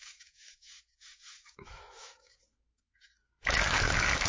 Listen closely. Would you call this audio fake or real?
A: fake